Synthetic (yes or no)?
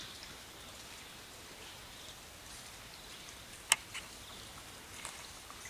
no